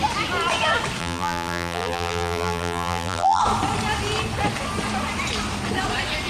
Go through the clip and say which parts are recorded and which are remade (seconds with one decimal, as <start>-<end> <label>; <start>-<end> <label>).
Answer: 0.0-1.0 recorded; 1.0-3.4 remade; 3.4-6.3 recorded